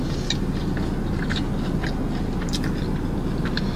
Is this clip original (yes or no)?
yes